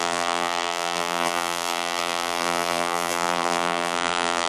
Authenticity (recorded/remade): remade